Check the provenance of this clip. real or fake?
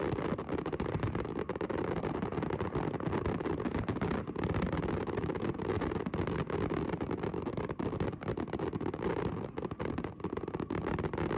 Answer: real